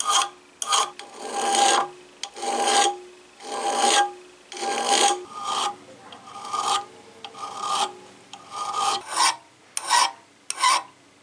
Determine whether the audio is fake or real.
real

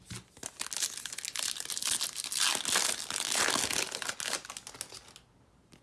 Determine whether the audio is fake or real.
real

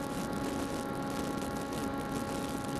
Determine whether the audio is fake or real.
real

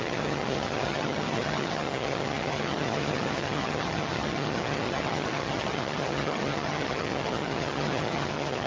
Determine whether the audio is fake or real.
fake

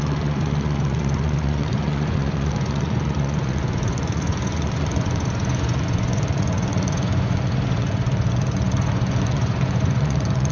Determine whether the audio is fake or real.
fake